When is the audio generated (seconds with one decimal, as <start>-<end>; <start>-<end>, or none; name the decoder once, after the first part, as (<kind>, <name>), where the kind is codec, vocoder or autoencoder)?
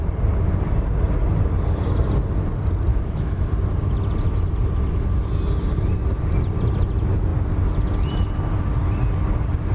2.9-3.5 (autoencoder, DAC-VAE)